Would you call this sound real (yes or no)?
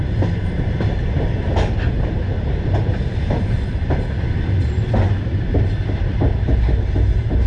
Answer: yes